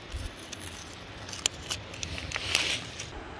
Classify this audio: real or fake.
real